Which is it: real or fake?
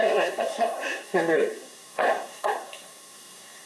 fake